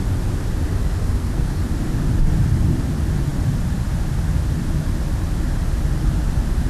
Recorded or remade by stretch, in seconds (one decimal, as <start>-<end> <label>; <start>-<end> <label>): 0.0-1.0 recorded; 1.0-1.6 remade; 1.6-6.7 recorded